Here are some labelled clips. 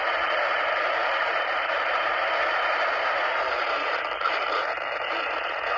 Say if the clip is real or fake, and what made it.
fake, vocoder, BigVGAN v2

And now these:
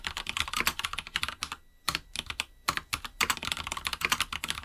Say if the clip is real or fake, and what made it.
real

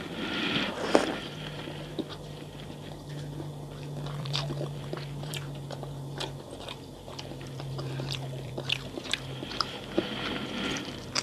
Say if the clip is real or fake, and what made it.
fake, vocoder, BigVGAN v2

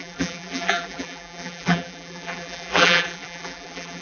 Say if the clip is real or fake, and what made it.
fake, vocoder, BigVGAN v2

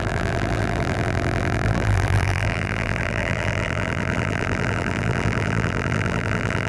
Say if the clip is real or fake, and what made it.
fake, vocoder, BigVGAN v2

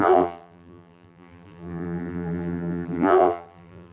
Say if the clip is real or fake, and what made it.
fake, vocoder, BigVGAN v2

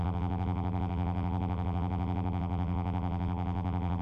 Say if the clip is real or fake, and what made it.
fake, vocoder, BigVGAN v2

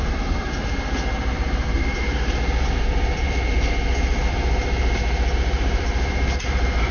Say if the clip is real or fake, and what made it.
fake, vocoder, BigVGAN v2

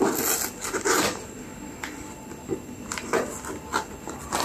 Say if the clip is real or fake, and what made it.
real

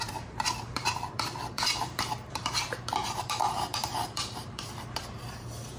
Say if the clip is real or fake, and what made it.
fake, vocoder, BigVGAN v2